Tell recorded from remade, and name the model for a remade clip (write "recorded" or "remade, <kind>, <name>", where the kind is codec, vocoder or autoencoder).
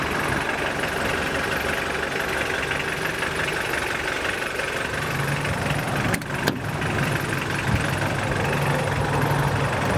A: recorded